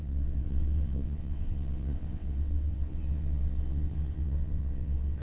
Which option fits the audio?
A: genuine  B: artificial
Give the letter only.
B